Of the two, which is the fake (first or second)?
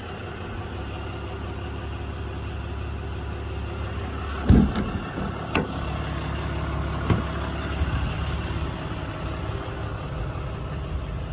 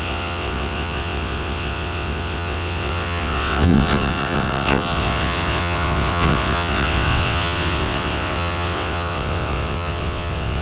second